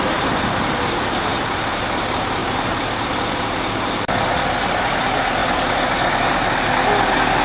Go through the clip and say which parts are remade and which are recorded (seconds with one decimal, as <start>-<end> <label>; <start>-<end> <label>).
0.0-1.3 recorded; 1.3-1.8 remade; 1.8-2.4 recorded; 2.4-3.1 remade; 3.1-7.4 recorded